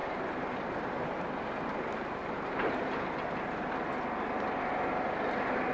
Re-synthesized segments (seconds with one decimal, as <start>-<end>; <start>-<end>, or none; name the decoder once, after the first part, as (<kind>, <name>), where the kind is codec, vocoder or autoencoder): 0.0-0.9 (vocoder, BigVGAN v2); 2.2-3.2